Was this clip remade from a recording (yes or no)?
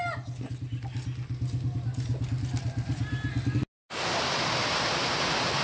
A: no